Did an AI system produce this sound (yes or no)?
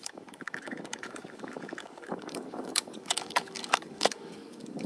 yes